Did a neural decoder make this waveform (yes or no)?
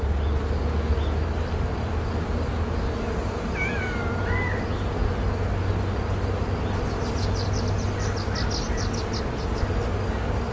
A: no